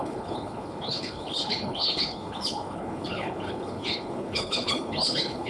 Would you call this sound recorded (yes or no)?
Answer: no